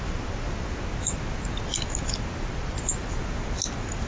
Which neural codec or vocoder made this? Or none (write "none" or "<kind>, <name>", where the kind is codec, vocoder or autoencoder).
none